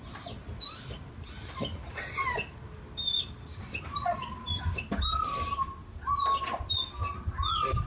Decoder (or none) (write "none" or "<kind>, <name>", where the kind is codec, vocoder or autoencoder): none